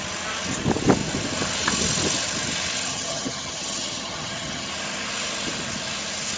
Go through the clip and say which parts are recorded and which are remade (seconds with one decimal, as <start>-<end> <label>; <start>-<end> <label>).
0.0-2.9 recorded; 2.9-4.7 remade; 4.7-6.4 recorded